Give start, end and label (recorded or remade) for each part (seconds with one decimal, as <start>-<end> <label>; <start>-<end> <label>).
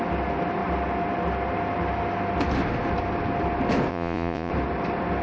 0.0-3.9 recorded; 3.9-4.5 remade; 4.5-5.2 recorded